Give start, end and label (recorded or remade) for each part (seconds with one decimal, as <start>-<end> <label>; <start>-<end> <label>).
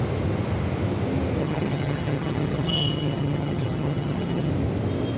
0.0-1.4 recorded; 1.4-4.5 remade; 4.5-5.2 recorded